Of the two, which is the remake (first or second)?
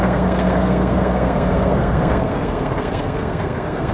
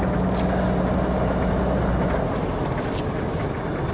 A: first